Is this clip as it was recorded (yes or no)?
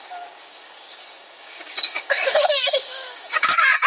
no